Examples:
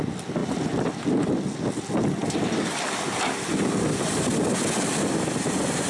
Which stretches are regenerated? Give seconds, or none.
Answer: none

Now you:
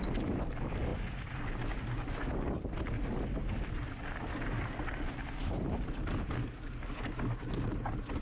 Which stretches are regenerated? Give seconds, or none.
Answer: none

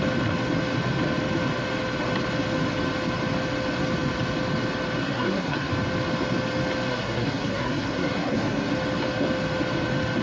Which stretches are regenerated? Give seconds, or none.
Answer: 5.0-5.7 (codec, SNAC); 6.9-8.7

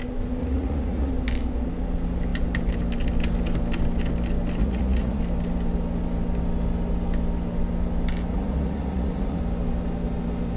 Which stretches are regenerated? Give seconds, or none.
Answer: 0.4-1.1 (vocoder, Vocos); 4.6-5.2; 8.3-9.4

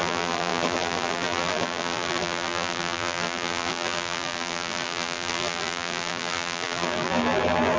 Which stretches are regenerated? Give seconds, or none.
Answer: 0.0-7.8 (vocoder, BigVGAN v2)